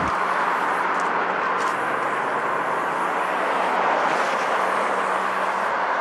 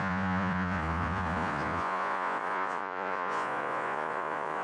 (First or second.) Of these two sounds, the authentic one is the first